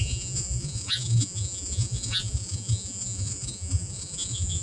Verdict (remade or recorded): remade